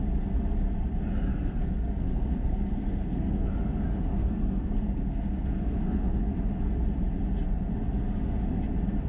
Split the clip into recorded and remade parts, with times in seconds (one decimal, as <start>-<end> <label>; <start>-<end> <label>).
0.0-1.3 recorded; 1.3-3.5 remade; 3.5-4.2 recorded; 4.2-6.3 remade; 6.3-9.1 recorded